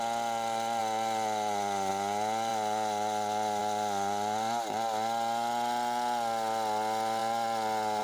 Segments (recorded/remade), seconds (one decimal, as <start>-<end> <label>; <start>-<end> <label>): 0.0-8.0 recorded